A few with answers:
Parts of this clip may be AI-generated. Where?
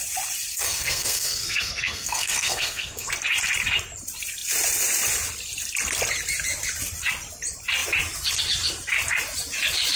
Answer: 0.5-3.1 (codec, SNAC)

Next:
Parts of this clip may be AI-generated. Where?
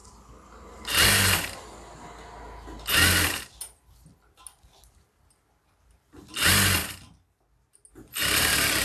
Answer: 3.1-6.8 (vocoder, BigVGAN v2); 7.9-8.8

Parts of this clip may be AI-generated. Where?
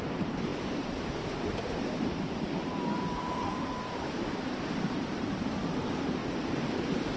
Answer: 0.0-7.2 (vocoder, BigVGAN v2)